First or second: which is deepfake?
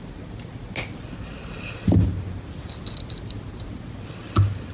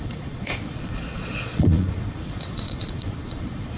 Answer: second